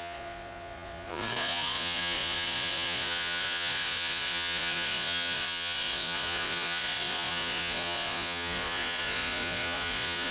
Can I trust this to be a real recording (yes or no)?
no